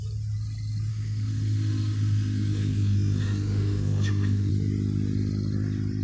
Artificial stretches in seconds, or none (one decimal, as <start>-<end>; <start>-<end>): 0.9-4.5